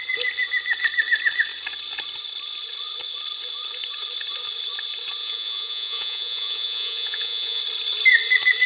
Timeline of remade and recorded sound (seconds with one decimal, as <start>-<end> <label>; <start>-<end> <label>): 0.0-5.2 recorded; 5.2-7.6 remade; 7.6-8.7 recorded